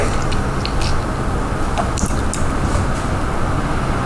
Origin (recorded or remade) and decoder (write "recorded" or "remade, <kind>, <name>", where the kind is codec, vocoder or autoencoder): recorded